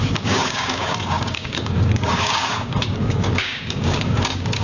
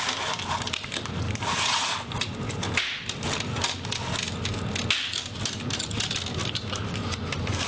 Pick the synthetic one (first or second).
first